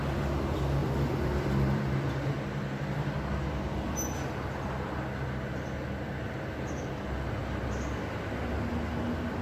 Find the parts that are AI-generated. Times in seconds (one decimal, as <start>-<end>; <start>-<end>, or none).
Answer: 0.8-2.1